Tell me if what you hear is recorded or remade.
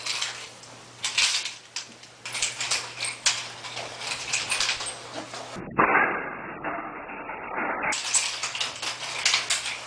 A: recorded